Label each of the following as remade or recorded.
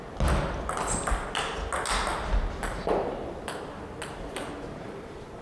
recorded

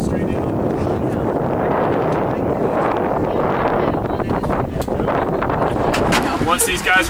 recorded